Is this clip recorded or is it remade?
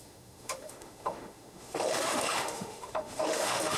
remade